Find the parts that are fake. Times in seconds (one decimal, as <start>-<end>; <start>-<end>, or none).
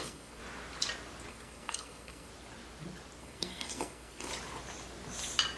0.0-0.4; 1.3-2.3; 3.2-4.3